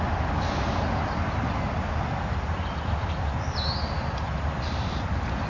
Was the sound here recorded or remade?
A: recorded